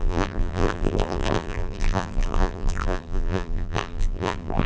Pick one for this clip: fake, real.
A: fake